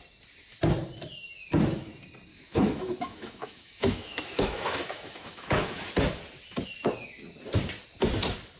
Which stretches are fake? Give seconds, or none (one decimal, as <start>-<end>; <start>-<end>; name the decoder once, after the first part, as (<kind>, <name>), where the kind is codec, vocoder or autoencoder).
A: 2.3-5.8 (autoencoder, DAC-VAE)